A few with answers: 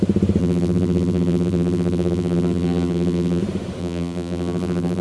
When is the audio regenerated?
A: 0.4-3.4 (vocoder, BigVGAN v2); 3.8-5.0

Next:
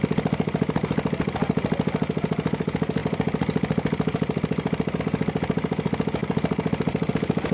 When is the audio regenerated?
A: 3.0-5.0 (vocoder, BigVGAN v2); 6.2-7.1